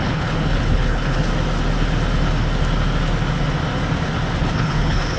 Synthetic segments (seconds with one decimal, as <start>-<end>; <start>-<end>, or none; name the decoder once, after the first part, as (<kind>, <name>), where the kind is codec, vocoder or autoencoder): 0.0-1.3 (codec, HILCodec); 4.4-5.2